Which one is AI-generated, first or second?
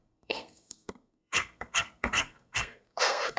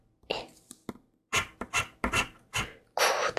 first